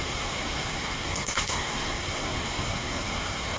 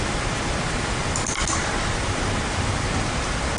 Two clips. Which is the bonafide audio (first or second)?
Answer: second